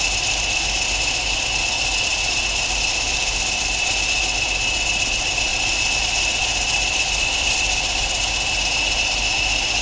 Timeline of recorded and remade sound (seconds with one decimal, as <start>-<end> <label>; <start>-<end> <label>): 0.0-2.1 recorded; 2.1-3.9 remade; 3.9-5.5 recorded; 5.5-6.0 remade; 6.0-6.4 recorded; 6.4-8.1 remade; 8.1-9.8 recorded